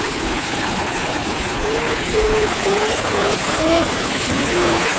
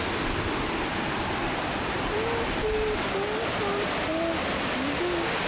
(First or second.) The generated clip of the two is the first